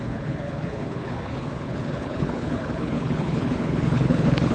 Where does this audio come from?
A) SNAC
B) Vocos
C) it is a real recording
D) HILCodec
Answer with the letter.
D